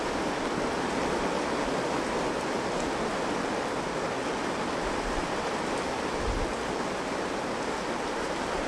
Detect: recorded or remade recorded